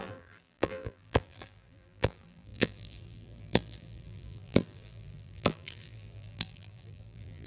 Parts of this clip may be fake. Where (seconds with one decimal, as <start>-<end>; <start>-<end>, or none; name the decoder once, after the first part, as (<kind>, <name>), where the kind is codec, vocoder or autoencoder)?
0.0-7.5 (vocoder, BigVGAN v2)

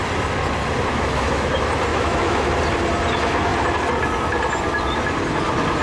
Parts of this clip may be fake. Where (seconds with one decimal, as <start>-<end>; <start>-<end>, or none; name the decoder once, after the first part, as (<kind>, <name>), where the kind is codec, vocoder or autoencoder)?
0.9-1.5 (autoencoder, DAC-VAE); 1.9-2.5

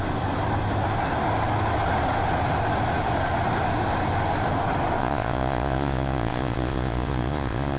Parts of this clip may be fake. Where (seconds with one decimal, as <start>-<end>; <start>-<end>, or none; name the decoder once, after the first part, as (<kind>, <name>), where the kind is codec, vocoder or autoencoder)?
5.0-7.8 (vocoder, Vocos)

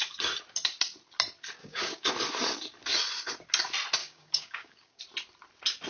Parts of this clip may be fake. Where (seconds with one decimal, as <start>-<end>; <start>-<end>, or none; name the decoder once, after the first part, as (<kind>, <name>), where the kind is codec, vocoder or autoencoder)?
1.6-2.1 (codec, DAC); 4.0-5.0

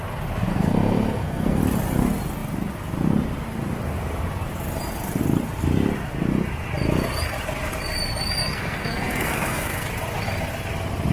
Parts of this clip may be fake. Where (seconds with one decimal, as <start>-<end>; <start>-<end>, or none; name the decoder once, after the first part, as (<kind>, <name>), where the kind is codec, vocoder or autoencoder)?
0.5-1.6 (codec, SNAC); 8.4-9.9

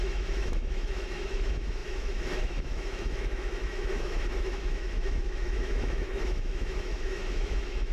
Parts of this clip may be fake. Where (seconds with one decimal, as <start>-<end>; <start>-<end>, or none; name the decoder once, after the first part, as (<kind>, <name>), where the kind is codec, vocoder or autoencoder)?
0.0-7.9 (autoencoder, DAC-VAE)

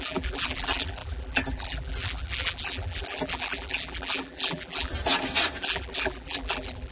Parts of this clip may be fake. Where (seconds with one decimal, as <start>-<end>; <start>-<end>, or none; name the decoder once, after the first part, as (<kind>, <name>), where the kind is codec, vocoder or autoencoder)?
0.0-4.9 (vocoder, BigVGAN v2); 5.6-6.9